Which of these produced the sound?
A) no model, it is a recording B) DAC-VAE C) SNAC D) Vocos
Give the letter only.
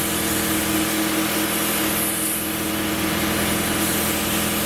A